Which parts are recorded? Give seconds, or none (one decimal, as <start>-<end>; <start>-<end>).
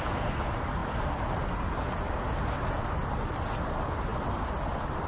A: 0.0-0.8; 1.5-4.1